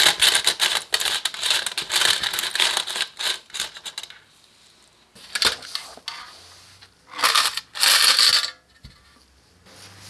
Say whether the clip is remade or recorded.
recorded